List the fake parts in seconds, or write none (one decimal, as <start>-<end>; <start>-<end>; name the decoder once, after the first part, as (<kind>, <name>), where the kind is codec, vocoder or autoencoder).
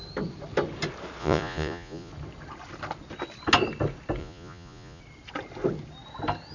1.2-2.1 (vocoder, Vocos); 4.2-5.0